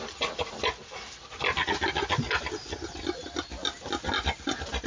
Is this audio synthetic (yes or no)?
no